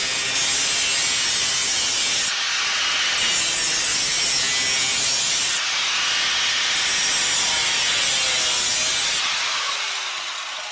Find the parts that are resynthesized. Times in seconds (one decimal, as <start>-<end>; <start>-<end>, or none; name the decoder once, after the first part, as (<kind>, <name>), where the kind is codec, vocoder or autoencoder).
none